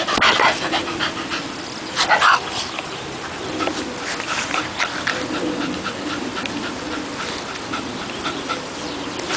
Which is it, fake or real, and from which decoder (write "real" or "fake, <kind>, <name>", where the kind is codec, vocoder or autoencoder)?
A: real